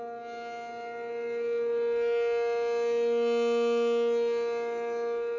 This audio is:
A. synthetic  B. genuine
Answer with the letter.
B